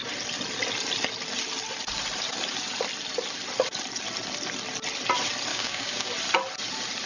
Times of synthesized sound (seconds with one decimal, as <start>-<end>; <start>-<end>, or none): 5.5-6.1